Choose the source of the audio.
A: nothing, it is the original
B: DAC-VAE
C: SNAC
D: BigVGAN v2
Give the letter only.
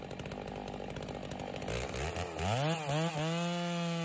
A